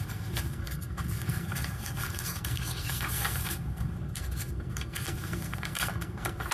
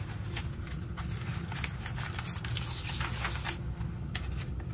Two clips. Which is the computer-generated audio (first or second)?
first